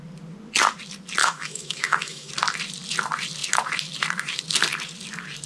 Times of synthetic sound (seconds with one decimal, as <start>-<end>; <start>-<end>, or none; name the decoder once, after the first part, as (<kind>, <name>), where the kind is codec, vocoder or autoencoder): 1.2-2.3 (autoencoder, DAC-VAE)